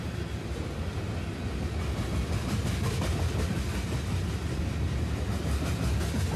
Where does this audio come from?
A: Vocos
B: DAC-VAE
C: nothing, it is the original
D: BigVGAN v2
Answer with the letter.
C